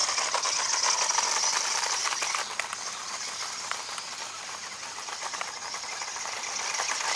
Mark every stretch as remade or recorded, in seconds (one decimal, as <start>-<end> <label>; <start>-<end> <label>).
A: 0.0-1.3 recorded; 1.3-7.2 remade